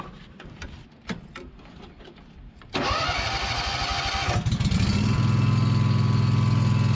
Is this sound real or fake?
real